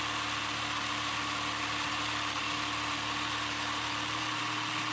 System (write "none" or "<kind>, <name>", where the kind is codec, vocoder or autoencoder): none